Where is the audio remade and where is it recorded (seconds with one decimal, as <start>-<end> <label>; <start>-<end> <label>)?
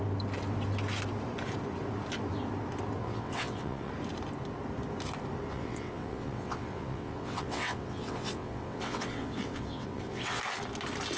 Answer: 0.0-3.0 recorded; 3.0-3.9 remade; 3.9-5.5 recorded; 5.5-10.4 remade; 10.4-11.2 recorded